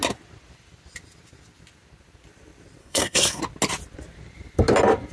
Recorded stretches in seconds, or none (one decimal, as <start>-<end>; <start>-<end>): 0.0-2.8; 3.4-5.1

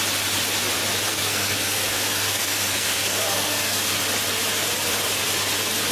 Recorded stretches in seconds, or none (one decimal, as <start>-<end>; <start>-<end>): 0.0-1.1; 3.9-5.9

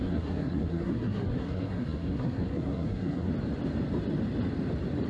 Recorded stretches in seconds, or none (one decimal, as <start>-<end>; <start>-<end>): 3.3-5.1

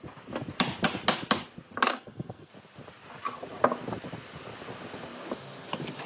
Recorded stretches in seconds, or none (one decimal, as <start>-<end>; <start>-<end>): 0.0-1.9; 2.5-6.1

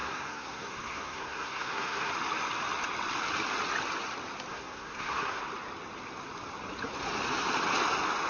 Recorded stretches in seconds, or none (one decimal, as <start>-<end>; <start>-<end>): 2.1-4.5; 5.4-8.3

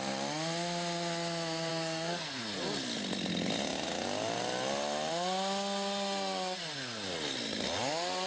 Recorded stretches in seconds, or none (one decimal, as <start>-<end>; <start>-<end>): 0.0-1.7; 2.4-8.3

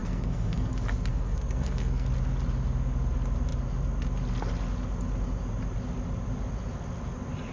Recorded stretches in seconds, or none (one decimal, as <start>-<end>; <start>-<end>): 0.7-1.1; 2.1-7.5

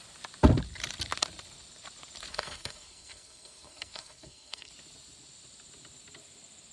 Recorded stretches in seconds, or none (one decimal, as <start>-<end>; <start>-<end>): 0.0-2.3; 4.7-6.7